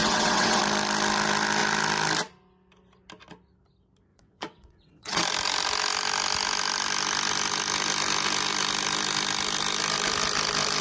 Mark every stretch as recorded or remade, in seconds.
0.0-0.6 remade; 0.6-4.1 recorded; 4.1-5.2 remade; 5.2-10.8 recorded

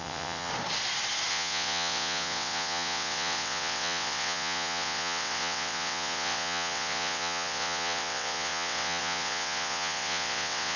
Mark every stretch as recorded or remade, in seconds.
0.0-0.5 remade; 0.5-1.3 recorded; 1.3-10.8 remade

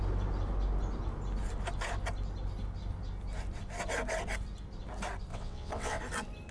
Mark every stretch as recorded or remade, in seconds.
0.0-5.3 recorded; 5.3-6.0 remade; 6.0-6.5 recorded

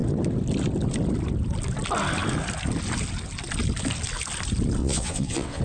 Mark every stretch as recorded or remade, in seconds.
0.0-4.8 recorded; 4.8-5.6 remade

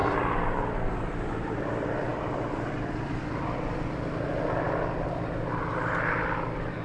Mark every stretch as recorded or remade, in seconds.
0.0-6.8 recorded